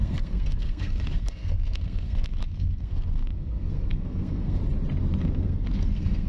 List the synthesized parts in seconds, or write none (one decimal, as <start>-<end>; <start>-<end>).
0.0-4.6; 5.2-6.3